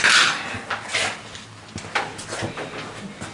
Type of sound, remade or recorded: recorded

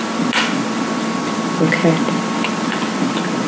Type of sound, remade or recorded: recorded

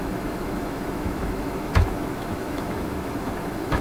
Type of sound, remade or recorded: remade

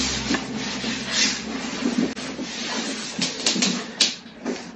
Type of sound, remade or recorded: recorded